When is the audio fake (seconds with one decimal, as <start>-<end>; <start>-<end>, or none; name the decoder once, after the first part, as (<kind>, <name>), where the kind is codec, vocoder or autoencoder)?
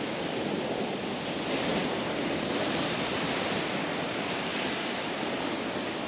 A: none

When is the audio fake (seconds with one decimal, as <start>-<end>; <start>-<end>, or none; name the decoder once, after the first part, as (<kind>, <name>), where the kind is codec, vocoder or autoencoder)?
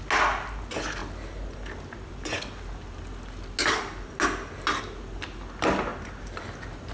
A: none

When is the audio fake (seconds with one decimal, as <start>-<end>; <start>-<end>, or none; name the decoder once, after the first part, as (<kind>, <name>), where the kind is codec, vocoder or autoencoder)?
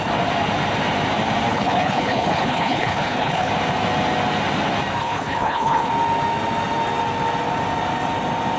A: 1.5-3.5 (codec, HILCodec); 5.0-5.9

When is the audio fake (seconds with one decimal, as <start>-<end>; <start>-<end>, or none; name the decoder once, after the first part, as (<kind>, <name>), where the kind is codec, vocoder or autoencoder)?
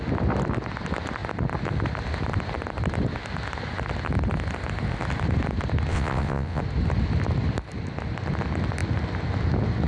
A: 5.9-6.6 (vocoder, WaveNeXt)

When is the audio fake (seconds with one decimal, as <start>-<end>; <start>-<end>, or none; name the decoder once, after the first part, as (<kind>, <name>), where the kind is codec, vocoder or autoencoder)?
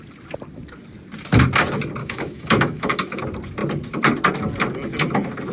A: 2.0-3.2 (autoencoder, DAC-VAE)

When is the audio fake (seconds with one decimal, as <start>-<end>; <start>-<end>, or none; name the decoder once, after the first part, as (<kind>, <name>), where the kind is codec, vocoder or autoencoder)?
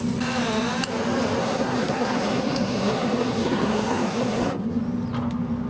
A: 1.4-4.8 (codec, SNAC)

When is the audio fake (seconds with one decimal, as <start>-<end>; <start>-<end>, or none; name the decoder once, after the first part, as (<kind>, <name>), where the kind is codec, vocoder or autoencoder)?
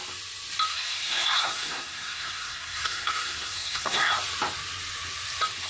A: 0.7-4.1 (codec, SNAC)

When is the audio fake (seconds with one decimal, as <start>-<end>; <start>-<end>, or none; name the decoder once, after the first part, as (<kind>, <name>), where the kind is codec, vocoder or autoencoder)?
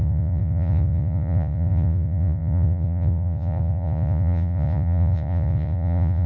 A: 0.0-6.3 (vocoder, Vocos)